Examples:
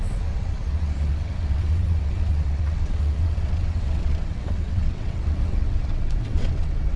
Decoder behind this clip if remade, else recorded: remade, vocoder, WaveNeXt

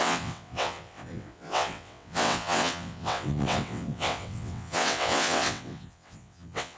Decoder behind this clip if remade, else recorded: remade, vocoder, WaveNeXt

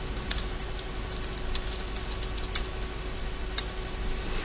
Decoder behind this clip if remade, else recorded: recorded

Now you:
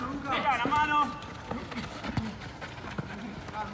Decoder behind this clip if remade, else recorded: recorded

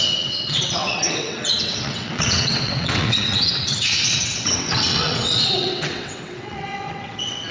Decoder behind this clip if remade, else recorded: remade, vocoder, WaveNeXt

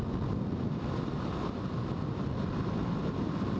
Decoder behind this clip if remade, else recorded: recorded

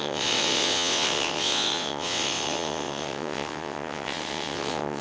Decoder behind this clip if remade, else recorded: remade, vocoder, WaveNeXt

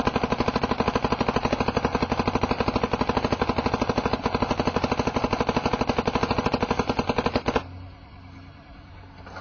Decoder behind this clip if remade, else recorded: recorded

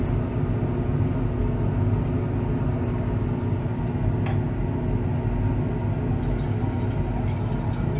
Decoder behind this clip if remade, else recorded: recorded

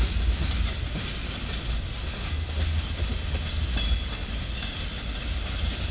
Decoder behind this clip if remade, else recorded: recorded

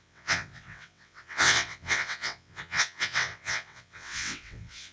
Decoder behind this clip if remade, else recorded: remade, vocoder, WaveNeXt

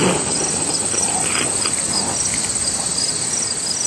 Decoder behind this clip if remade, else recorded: recorded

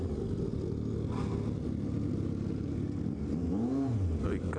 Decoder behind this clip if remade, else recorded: recorded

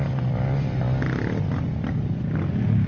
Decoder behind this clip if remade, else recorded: recorded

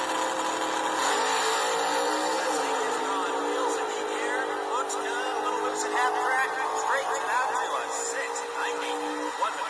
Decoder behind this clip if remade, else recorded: recorded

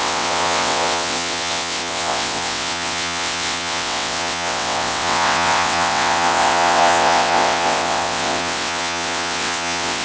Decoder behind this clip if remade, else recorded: remade, vocoder, WaveNeXt